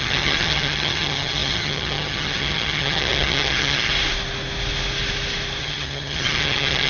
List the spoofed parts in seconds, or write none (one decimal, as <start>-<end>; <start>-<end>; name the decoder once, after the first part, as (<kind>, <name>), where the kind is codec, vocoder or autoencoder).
0.0-3.9 (vocoder, HiFi-GAN); 5.6-6.9